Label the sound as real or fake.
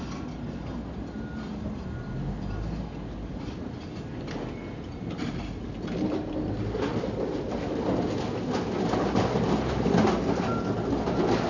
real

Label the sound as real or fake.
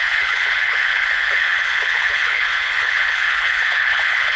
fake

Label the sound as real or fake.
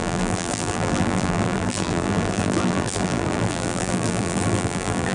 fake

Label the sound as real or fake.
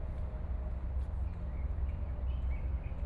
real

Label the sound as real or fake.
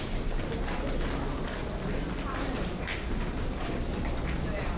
real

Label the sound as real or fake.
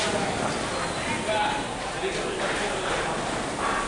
real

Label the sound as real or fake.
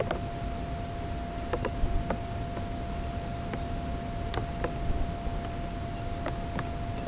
real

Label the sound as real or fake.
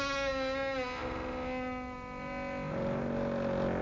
real